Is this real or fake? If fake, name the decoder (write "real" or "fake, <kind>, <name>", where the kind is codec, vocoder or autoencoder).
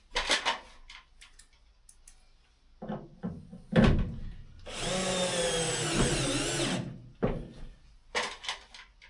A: real